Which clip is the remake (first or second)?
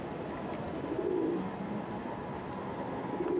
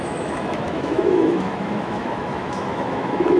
second